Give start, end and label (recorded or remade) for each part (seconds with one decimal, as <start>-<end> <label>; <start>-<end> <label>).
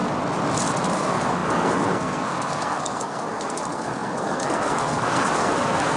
0.0-0.9 recorded; 0.9-6.0 remade